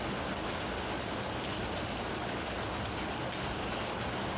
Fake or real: real